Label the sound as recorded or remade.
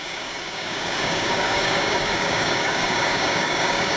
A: remade